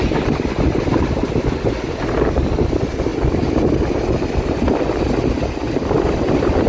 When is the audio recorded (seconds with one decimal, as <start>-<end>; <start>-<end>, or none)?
0.0-6.7